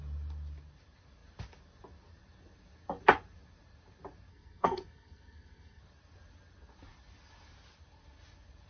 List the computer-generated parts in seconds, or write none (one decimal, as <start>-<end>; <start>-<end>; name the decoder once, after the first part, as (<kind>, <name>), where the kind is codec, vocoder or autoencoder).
4.3-5.8 (codec, SNAC)